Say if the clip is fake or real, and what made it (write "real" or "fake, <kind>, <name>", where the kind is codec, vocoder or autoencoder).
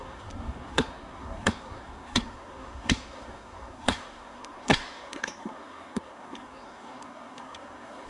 fake, codec, SNAC